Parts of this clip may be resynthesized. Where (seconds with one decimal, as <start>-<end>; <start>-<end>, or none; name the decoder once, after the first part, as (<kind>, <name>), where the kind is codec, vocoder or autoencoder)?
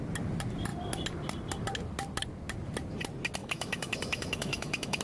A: 3.4-5.0 (autoencoder, DAC-VAE)